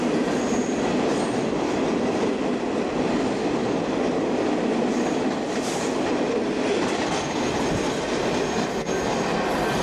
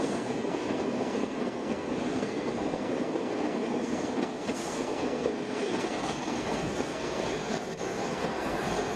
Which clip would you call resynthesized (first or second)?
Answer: second